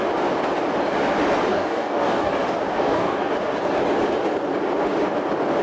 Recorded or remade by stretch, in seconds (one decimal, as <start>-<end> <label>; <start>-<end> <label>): 0.0-1.5 recorded; 1.5-2.3 remade; 2.3-2.7 recorded; 2.7-3.3 remade; 3.3-5.6 recorded